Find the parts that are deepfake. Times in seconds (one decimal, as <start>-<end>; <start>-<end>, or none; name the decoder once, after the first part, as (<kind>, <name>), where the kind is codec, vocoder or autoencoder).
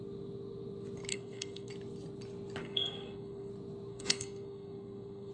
1.1-1.7 (codec, SNAC); 2.6-3.5; 3.9-5.3